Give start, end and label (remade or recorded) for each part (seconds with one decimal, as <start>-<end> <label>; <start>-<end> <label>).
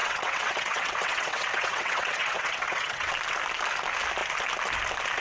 0.0-3.1 remade; 3.1-5.2 recorded